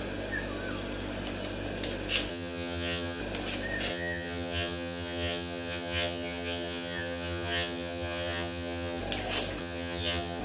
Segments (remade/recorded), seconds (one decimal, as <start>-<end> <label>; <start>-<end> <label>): 0.0-2.3 recorded; 2.3-3.2 remade; 3.2-3.9 recorded; 3.9-9.0 remade; 9.0-9.6 recorded; 9.6-10.4 remade